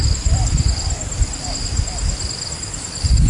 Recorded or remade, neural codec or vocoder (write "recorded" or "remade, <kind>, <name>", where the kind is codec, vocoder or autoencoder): recorded